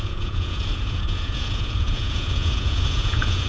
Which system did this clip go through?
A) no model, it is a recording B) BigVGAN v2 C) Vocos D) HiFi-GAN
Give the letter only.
C